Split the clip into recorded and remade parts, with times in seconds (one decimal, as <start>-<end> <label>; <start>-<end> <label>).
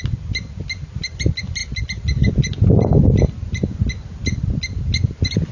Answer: 0.0-5.5 recorded